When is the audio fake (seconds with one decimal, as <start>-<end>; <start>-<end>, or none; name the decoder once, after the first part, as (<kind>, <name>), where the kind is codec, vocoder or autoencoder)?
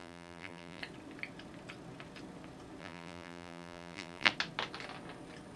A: 0.0-0.8 (vocoder, BigVGAN v2); 2.8-4.3